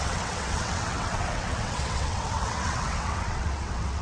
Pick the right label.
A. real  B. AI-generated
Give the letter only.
B